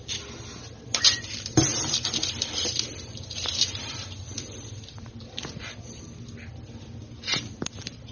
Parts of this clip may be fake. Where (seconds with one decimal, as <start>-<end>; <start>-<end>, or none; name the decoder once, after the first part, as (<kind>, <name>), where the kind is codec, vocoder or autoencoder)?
1.7-5.8 (vocoder, BigVGAN v2)